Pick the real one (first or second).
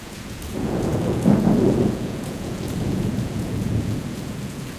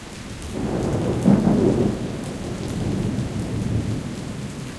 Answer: second